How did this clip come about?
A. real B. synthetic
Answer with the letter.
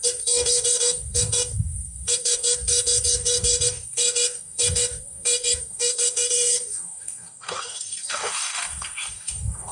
B